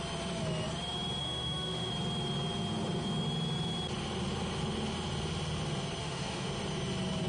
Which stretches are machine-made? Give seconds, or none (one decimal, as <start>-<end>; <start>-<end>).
1.2-1.9; 6.0-6.5